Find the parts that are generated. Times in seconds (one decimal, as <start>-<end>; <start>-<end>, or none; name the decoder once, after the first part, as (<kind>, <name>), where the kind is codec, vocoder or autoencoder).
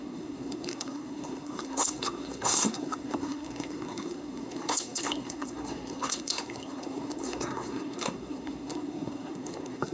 0.0-9.9 (codec, SNAC)